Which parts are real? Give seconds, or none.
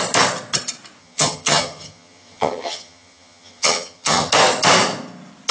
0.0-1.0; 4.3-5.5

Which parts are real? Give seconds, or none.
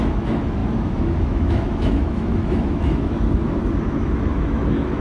none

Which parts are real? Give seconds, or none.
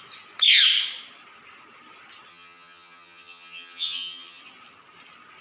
0.0-2.3; 4.4-5.4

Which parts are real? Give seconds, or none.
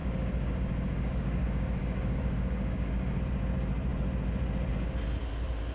3.2-5.7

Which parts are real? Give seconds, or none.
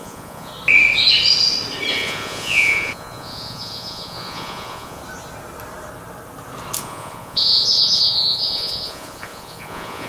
0.5-1.9; 5.0-6.8